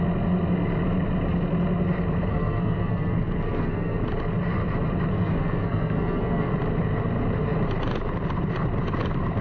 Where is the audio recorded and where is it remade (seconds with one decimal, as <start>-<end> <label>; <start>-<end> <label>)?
0.0-2.3 recorded; 2.3-4.0 remade; 4.0-5.1 recorded; 5.1-6.5 remade; 6.5-9.4 recorded